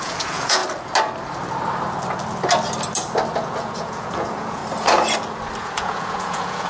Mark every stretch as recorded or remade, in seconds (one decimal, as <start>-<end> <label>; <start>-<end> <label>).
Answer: 0.0-0.6 remade; 0.6-3.4 recorded; 3.4-4.6 remade; 4.6-5.6 recorded; 5.6-6.7 remade